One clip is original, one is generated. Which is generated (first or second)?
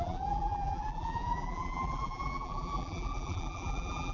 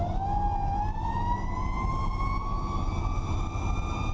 first